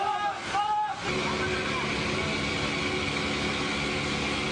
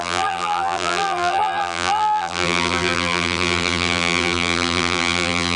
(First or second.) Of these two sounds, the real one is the first